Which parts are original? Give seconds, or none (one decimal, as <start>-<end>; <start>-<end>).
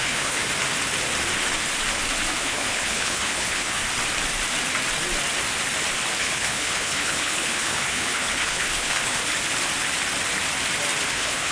0.4-2.4; 3.8-6.2; 9.2-11.1